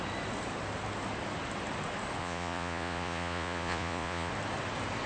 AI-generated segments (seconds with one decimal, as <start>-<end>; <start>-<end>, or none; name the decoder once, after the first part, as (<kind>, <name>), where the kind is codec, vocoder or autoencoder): 2.2-4.3 (vocoder, Vocos)